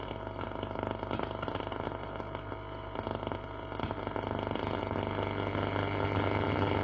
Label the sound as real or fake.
real